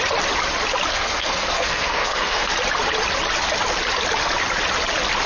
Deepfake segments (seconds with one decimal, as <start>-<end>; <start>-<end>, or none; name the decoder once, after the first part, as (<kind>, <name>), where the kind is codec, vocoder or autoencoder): 0.9-2.5 (codec, SNAC)